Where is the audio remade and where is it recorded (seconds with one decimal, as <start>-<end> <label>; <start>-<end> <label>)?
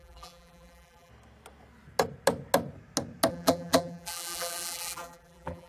0.0-1.1 remade; 1.1-3.3 recorded; 3.3-5.7 remade